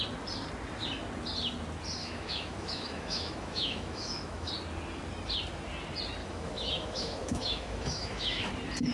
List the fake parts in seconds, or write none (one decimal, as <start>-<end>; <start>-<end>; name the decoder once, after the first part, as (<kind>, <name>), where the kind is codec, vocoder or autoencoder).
2.0-4.5 (autoencoder, DAC-VAE); 6.2-8.5

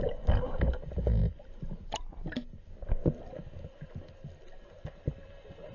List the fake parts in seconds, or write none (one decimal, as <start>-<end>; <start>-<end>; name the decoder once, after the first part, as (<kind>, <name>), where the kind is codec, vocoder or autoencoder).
none